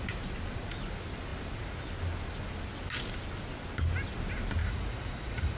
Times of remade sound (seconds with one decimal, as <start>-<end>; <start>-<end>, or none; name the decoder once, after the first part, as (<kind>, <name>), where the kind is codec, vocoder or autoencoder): 4.6-5.6 (vocoder, Vocos)